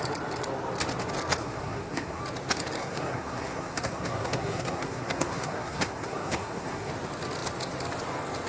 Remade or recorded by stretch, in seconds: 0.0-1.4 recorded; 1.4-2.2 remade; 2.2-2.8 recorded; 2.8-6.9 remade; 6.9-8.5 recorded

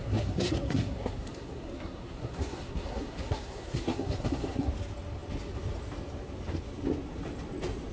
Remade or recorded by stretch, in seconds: 0.0-4.7 remade; 4.7-7.9 recorded

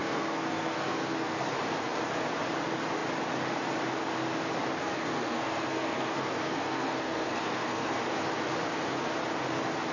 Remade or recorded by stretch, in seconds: 0.0-1.5 remade; 1.5-4.8 recorded; 4.8-8.0 remade; 8.0-9.9 recorded

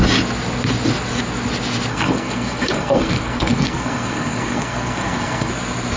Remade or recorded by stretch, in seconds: 0.0-1.9 recorded; 1.9-5.5 remade; 5.5-6.0 recorded

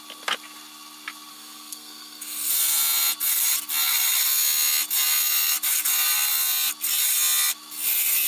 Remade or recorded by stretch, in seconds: 0.0-1.3 recorded; 1.3-2.5 remade; 2.5-8.3 recorded

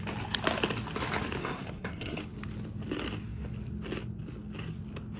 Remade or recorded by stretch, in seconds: 0.0-1.4 recorded; 1.4-2.2 remade; 2.2-5.2 recorded

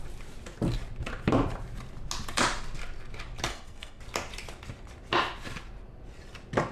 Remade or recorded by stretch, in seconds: 0.0-3.5 recorded; 3.5-4.0 remade; 4.0-6.7 recorded

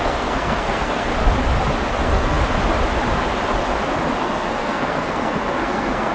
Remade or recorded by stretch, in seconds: 0.0-1.1 remade; 1.1-1.9 recorded; 1.9-2.4 remade; 2.4-4.2 recorded; 4.2-6.1 remade